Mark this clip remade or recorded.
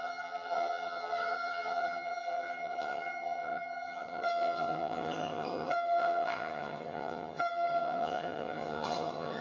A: remade